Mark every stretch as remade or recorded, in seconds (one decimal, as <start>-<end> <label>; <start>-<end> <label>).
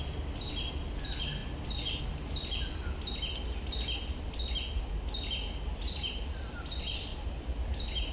0.0-8.1 recorded